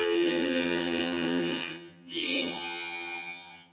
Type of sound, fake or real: fake